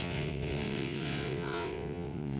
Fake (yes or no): yes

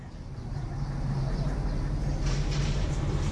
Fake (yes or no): yes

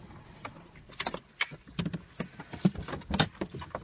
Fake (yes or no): no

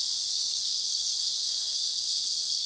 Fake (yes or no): yes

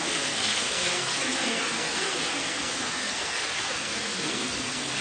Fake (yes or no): yes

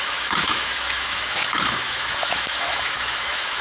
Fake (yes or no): yes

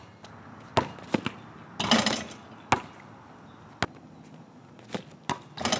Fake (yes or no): no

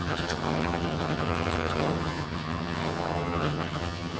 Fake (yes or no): yes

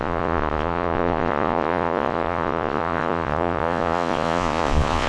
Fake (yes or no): yes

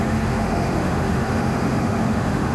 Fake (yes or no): yes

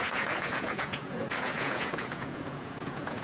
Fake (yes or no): yes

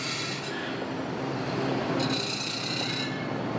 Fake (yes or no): no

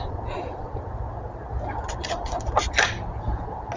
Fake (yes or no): no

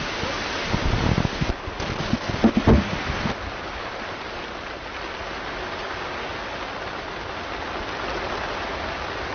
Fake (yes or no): no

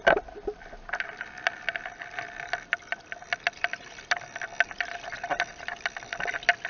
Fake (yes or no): no